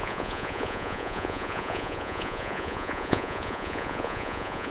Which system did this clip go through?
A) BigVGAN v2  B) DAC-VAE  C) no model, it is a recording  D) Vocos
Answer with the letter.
D